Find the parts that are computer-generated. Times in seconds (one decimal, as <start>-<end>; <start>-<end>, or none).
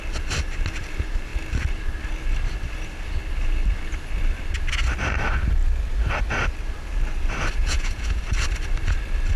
7.6-8.2